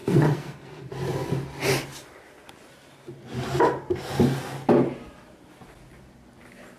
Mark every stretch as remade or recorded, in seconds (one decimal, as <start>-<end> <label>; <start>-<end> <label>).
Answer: 0.0-0.9 remade; 0.9-6.8 recorded